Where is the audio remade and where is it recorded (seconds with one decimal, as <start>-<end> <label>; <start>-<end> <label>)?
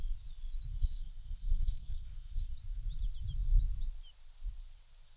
0.0-0.7 recorded; 0.7-2.5 remade; 2.5-5.2 recorded